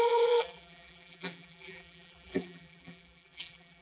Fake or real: fake